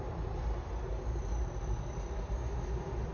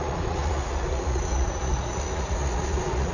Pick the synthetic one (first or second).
second